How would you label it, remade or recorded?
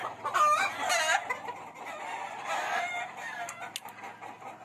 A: recorded